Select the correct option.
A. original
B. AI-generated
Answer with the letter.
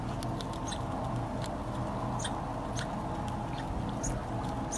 A